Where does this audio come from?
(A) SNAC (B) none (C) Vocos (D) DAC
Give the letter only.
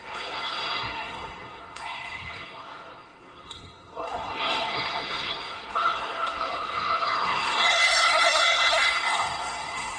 A